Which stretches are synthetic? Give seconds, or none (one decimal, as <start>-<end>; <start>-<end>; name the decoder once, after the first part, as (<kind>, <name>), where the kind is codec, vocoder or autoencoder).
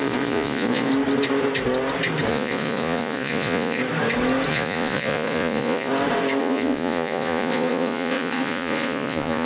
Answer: 0.0-0.9 (vocoder, Vocos); 2.3-3.8; 4.5-5.9; 6.4-9.4